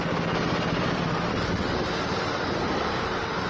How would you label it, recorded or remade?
recorded